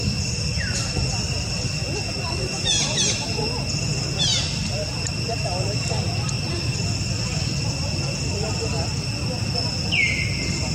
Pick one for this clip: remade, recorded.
recorded